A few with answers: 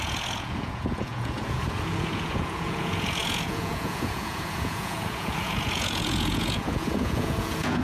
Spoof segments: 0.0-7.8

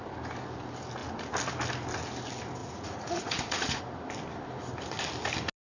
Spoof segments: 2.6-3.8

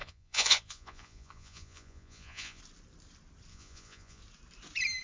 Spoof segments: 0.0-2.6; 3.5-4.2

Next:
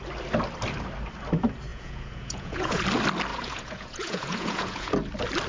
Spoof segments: 1.7-2.8; 3.3-4.9